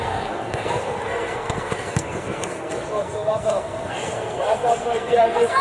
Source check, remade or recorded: remade